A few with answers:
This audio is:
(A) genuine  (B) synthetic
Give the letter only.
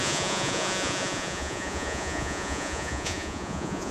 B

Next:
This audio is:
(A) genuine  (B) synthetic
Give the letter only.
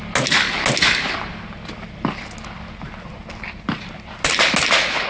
A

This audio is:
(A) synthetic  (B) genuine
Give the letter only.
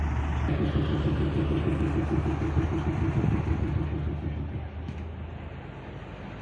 B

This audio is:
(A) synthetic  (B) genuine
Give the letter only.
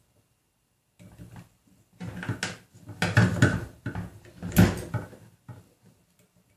B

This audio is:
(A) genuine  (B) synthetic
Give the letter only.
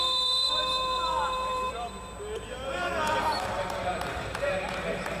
B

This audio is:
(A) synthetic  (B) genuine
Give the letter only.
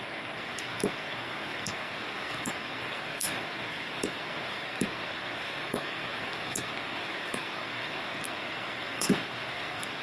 A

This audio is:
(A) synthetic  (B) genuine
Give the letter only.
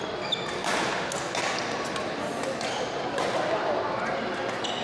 B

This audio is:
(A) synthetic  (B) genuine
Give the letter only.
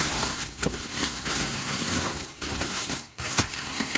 A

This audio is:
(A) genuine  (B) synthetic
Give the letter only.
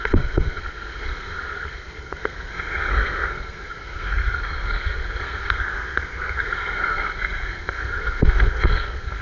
B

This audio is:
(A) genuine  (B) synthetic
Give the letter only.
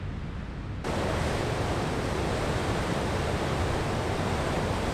A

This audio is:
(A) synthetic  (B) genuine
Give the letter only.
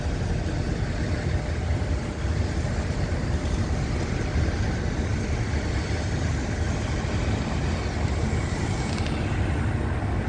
B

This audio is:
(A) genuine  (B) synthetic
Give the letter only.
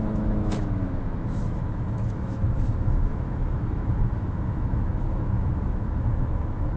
B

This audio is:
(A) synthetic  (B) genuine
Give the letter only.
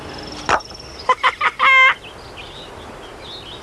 B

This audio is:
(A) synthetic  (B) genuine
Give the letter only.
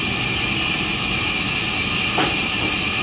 B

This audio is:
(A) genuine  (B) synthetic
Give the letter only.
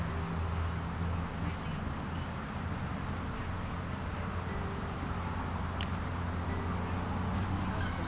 A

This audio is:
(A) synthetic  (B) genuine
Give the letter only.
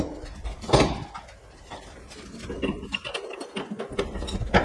B